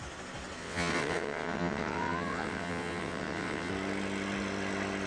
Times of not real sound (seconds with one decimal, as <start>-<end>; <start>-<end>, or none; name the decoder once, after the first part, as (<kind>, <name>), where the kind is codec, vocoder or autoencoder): 0.6-3.7 (vocoder, WaveNeXt)